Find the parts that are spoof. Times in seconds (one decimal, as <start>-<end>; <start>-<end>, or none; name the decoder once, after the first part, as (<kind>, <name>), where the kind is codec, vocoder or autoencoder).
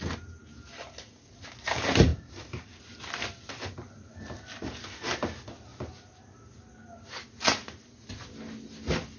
none